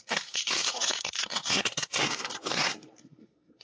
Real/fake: fake